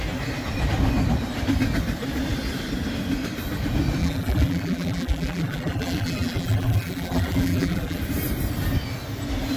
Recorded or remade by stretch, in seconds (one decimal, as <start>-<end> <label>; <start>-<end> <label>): 0.0-4.0 recorded; 4.0-8.0 remade; 8.0-9.6 recorded